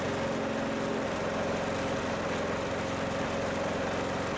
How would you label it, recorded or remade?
recorded